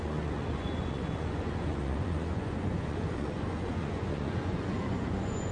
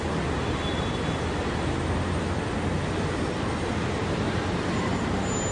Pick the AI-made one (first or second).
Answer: first